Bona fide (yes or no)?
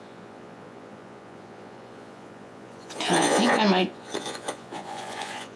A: no